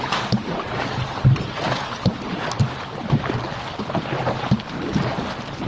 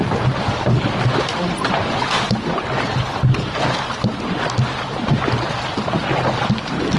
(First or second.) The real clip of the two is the second